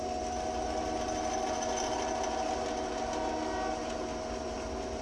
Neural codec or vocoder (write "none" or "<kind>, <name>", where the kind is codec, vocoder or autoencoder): none